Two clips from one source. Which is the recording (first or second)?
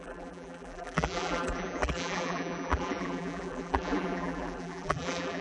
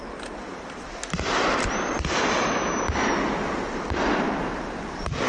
second